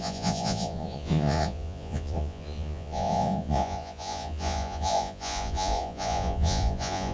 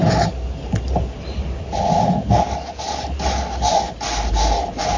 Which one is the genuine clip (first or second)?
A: second